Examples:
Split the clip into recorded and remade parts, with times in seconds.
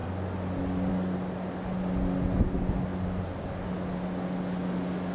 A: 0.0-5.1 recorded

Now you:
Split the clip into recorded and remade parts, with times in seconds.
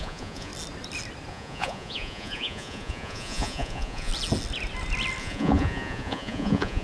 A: 0.0-0.5 remade; 0.5-1.3 recorded; 1.3-4.1 remade; 4.1-5.2 recorded; 5.2-6.8 remade